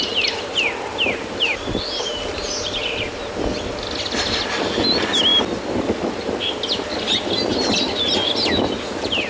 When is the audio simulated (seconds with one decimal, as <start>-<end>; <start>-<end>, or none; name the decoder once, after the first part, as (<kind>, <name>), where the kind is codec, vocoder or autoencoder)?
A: 0.9-3.2 (vocoder, BigVGAN v2)